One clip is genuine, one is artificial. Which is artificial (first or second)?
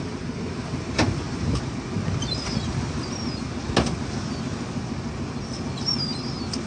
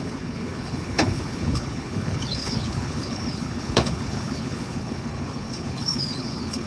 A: second